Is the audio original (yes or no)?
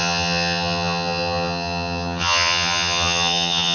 no